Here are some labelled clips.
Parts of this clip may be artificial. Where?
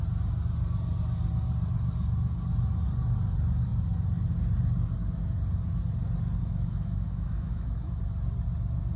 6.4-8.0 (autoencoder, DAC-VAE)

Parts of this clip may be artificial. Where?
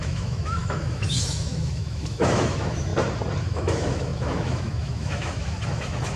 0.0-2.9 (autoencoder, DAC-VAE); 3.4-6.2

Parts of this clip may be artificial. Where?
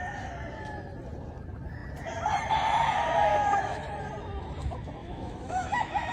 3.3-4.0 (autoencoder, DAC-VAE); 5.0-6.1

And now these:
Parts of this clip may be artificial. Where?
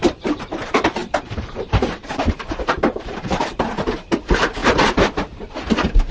0.0-4.6 (vocoder, BigVGAN v2)